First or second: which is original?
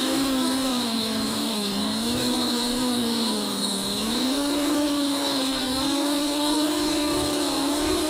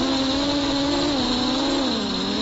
second